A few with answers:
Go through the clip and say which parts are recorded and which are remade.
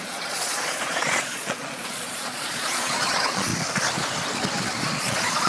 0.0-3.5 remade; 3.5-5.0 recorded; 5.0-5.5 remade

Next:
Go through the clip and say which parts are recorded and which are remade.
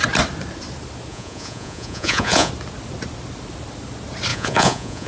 0.0-1.1 recorded; 1.1-2.5 remade; 2.5-4.3 recorded; 4.3-5.1 remade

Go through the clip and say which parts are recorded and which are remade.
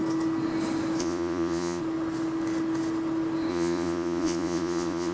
0.0-1.0 recorded; 1.0-1.8 remade; 1.8-3.5 recorded; 3.5-5.1 remade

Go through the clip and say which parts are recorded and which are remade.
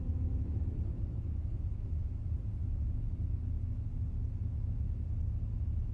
0.0-5.9 recorded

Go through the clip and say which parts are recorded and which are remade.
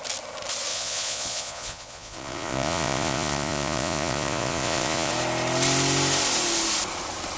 0.0-0.7 recorded; 0.7-5.1 remade; 5.1-7.4 recorded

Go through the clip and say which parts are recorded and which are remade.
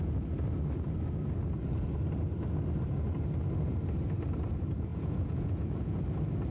0.0-4.9 recorded; 4.9-6.0 remade; 6.0-6.5 recorded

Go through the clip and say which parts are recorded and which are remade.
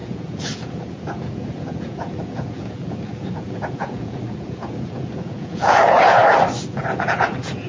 0.0-6.2 remade; 6.2-6.8 recorded; 6.8-7.7 remade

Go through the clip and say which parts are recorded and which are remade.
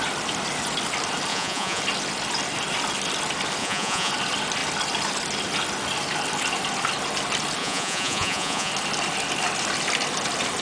0.0-1.3 recorded; 1.3-1.8 remade; 1.8-3.6 recorded; 3.6-4.1 remade; 4.1-7.6 recorded; 7.6-8.7 remade; 8.7-10.6 recorded